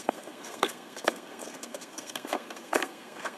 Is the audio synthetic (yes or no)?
yes